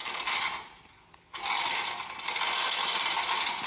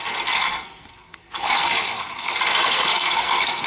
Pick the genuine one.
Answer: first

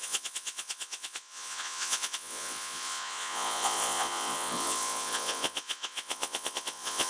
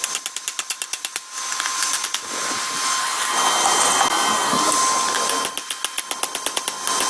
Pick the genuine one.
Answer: second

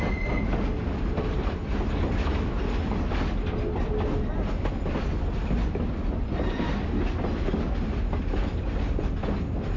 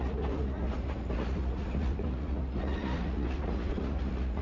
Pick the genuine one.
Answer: first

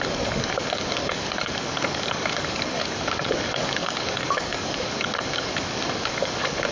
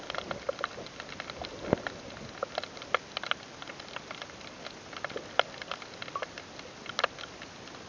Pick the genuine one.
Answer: second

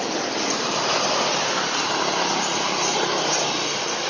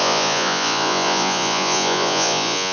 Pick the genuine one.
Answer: first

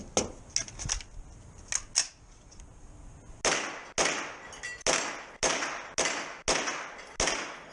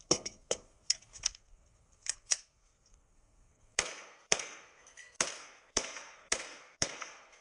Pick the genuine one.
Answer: first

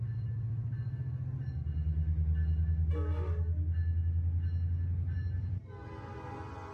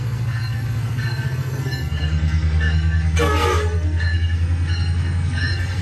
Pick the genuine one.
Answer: first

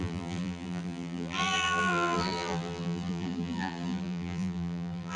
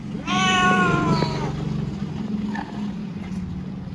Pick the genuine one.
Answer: second